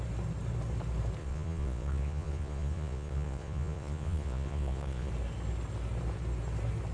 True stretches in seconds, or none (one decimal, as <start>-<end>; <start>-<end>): 0.0-1.2; 5.1-6.9